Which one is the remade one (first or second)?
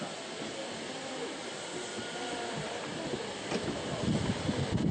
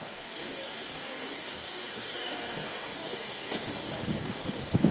second